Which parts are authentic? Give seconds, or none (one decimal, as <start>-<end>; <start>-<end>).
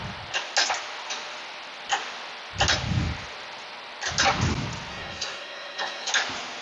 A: 0.0-4.9; 6.1-6.6